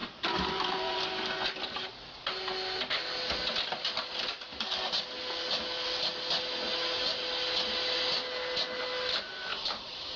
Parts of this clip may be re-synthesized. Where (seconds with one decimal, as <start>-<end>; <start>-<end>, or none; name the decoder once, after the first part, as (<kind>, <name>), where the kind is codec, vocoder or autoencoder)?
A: 0.0-1.0 (vocoder, BigVGAN v2); 9.5-10.2